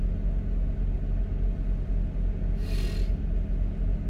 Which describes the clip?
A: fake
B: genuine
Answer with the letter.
B